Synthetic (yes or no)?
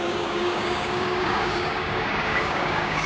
yes